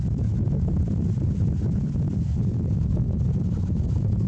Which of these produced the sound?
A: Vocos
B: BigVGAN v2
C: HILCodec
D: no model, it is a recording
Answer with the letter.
D